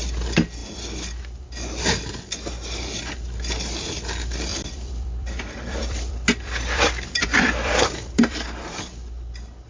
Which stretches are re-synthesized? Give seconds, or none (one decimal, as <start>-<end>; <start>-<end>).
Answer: 4.5-8.6